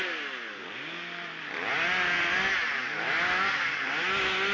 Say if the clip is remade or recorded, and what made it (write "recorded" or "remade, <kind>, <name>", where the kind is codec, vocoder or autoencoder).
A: recorded